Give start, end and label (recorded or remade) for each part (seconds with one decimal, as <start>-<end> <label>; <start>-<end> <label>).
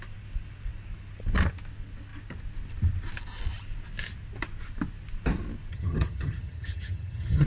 0.0-5.7 recorded; 5.7-7.5 remade